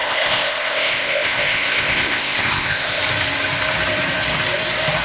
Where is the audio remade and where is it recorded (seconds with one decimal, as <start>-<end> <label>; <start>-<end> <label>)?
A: 0.0-3.0 remade; 3.0-5.0 recorded